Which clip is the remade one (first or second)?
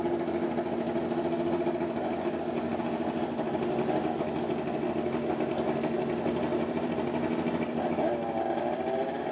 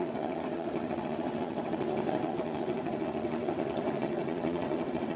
second